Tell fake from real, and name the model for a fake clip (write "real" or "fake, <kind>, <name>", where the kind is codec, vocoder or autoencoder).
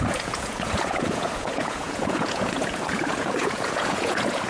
fake, vocoder, Vocos